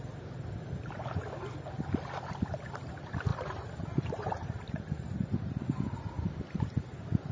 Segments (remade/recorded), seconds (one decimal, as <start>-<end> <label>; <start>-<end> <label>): 0.0-3.3 recorded; 3.3-6.0 remade; 6.0-7.3 recorded